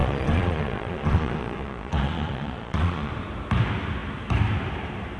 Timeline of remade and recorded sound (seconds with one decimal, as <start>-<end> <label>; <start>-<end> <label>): 0.0-3.1 remade; 3.1-5.2 recorded